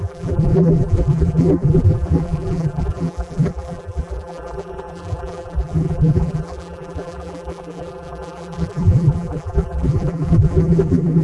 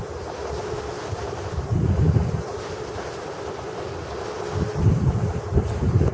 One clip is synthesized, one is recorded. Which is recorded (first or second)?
second